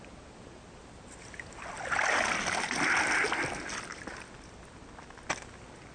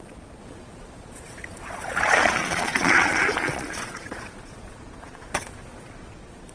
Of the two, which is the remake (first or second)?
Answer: second